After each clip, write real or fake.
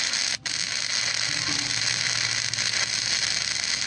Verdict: real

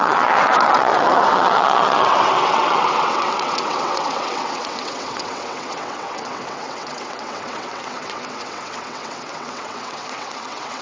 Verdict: fake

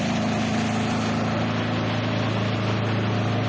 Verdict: real